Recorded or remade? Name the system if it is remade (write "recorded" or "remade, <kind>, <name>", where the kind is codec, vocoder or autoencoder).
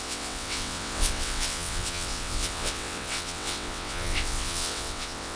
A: remade, vocoder, WaveNeXt